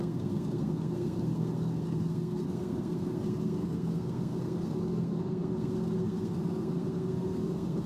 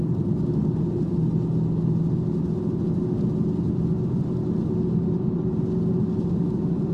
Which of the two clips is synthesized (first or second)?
first